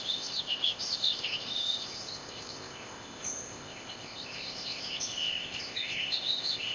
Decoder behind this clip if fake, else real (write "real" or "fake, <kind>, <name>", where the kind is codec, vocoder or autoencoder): fake, codec, ZipCodec